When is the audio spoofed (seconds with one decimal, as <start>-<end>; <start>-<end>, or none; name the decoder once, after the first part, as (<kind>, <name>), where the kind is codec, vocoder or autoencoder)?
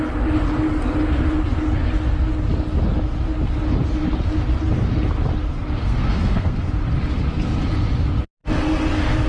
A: 5.8-6.7 (codec, SNAC)